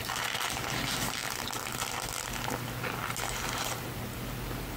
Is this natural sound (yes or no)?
yes